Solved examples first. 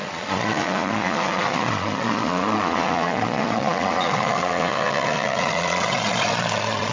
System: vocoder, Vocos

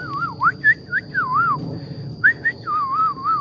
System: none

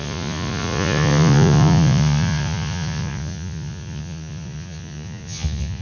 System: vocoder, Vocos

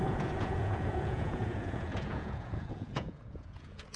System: vocoder, Vocos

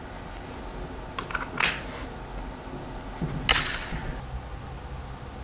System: none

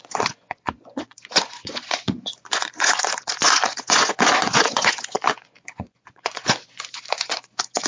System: vocoder, Vocos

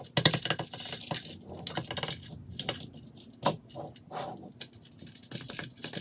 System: none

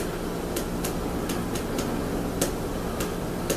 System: none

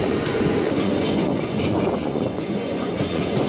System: vocoder, Vocos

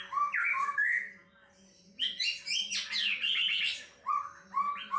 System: none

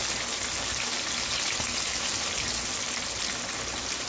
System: none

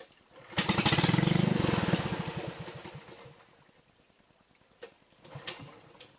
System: none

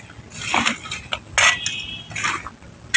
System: none